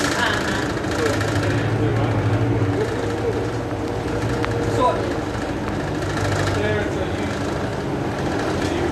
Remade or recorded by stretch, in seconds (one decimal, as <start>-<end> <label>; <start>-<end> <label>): 0.0-8.9 recorded